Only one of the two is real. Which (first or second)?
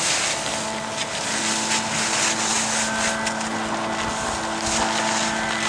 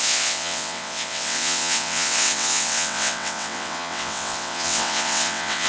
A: first